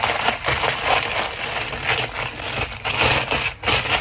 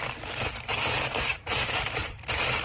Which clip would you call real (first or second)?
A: first